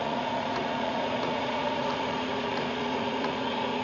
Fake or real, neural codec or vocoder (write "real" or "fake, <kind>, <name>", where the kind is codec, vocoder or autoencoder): fake, vocoder, Vocos